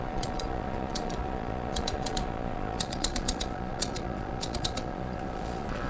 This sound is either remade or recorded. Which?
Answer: remade